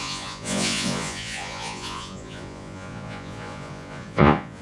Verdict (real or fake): fake